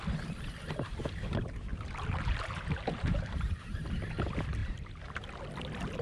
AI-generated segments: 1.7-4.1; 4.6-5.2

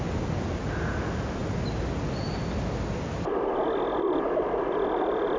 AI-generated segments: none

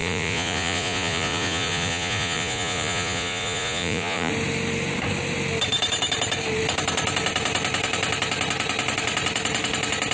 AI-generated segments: 0.0-4.3